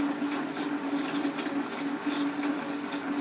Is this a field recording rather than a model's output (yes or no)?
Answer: yes